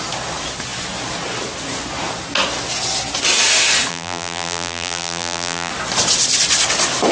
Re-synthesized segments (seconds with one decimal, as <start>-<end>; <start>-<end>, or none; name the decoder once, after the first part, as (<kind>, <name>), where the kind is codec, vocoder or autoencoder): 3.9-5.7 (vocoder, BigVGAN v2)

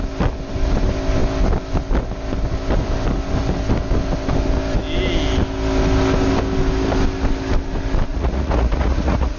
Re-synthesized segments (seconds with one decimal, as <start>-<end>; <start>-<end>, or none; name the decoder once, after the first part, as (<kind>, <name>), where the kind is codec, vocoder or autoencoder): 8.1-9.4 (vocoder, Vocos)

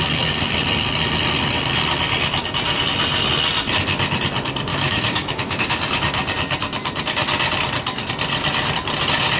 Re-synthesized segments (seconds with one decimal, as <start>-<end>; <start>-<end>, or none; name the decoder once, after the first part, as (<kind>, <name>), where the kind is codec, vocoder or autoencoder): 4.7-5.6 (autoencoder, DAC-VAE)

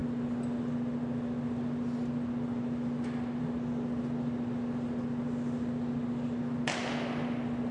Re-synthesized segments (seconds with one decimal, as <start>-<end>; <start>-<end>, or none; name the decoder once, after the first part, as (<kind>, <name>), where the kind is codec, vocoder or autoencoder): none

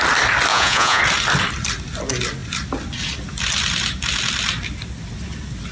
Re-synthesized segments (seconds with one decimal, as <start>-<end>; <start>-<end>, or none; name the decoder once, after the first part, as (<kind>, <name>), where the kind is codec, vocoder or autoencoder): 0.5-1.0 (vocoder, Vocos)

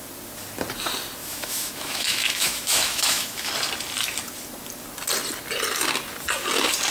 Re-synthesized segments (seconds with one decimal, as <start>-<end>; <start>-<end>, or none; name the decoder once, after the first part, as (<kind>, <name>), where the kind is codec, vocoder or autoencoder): 1.2-3.5 (autoencoder, DAC-VAE)